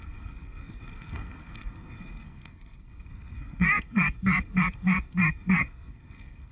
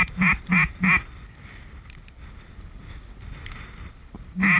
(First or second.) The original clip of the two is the second